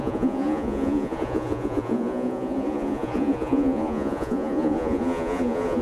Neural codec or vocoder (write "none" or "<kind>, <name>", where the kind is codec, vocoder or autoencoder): vocoder, Vocos